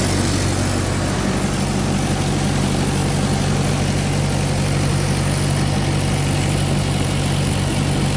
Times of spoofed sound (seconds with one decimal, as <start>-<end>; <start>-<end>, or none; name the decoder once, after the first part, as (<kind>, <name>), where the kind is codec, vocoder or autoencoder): none